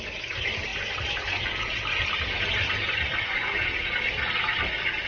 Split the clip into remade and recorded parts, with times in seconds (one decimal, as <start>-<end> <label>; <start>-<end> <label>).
0.0-0.7 recorded; 0.7-3.8 remade; 3.8-5.1 recorded